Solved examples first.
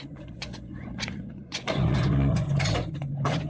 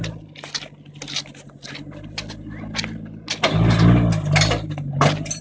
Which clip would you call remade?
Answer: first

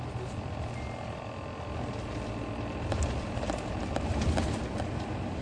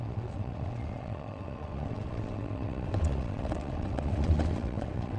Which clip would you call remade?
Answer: second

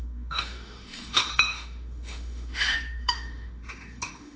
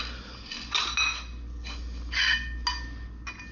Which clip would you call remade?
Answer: first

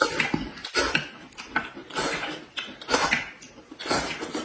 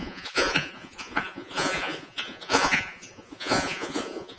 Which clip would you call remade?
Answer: second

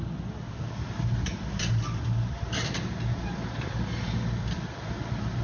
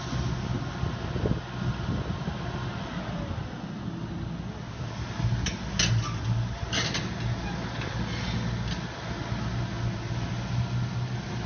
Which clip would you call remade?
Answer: first